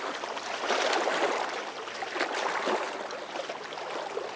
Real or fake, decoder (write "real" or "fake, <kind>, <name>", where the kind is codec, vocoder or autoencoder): real